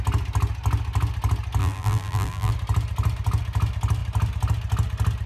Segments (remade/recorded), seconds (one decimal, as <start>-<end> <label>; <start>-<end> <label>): 0.0-1.6 recorded; 1.6-2.5 remade; 2.5-5.3 recorded